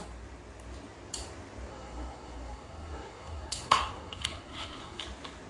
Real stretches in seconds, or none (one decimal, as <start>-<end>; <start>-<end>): 0.0-1.7; 5.0-5.5